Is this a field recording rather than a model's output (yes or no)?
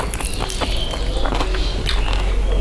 yes